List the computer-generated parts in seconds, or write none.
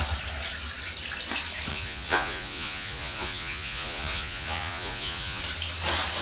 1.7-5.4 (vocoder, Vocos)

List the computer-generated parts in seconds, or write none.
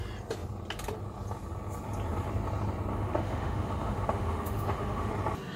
2.9-5.1 (autoencoder, DAC-VAE)